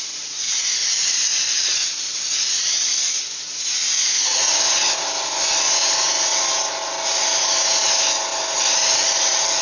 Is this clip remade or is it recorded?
recorded